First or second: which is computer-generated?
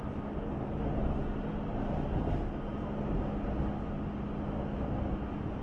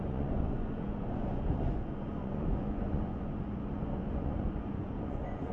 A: second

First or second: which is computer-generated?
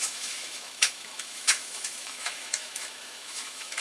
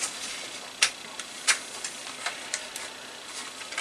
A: first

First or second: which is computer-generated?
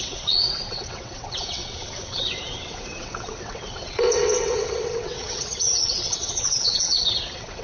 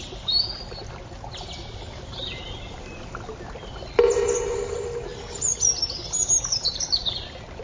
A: first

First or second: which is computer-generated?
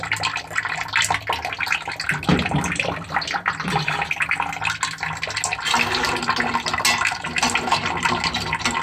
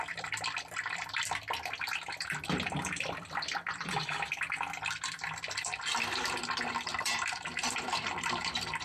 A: second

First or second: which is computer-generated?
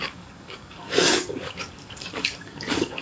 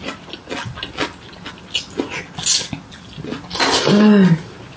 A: first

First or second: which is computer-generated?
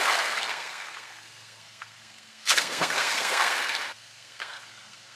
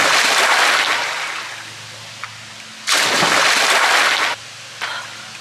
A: first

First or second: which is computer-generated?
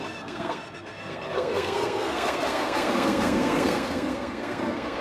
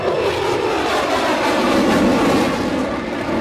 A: first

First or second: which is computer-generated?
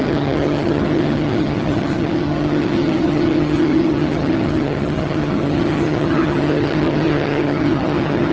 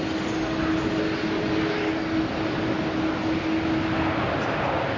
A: first